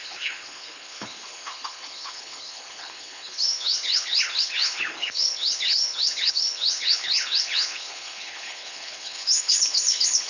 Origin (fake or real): fake